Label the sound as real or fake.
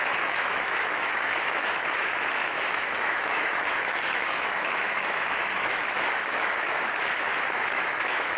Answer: fake